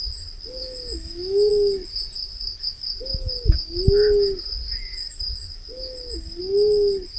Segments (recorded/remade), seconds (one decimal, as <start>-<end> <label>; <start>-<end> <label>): 0.0-0.6 recorded; 0.6-1.5 remade; 1.5-2.3 recorded; 2.3-3.8 remade; 3.8-4.9 recorded; 4.9-6.4 remade; 6.4-7.2 recorded